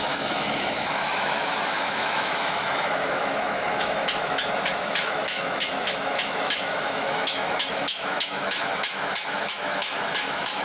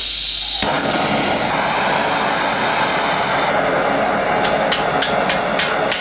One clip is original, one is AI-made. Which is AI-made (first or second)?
first